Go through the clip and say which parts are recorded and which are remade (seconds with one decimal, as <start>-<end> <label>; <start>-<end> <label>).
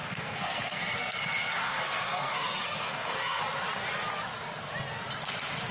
0.0-3.4 remade; 3.4-5.7 recorded